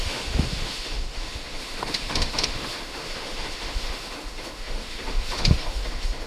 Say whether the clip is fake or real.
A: fake